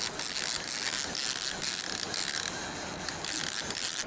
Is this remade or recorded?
recorded